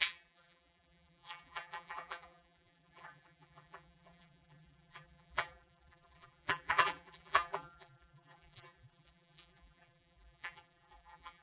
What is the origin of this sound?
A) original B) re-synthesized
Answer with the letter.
B